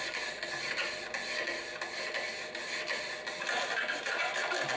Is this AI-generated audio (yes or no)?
no